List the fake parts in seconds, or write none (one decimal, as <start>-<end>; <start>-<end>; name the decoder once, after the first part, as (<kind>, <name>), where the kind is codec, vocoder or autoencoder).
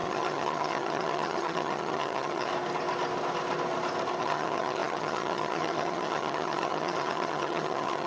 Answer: 0.0-2.5 (vocoder, HiFi-GAN); 4.2-8.1